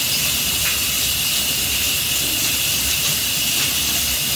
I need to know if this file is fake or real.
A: real